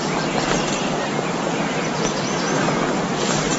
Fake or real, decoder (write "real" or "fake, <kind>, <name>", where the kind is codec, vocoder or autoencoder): real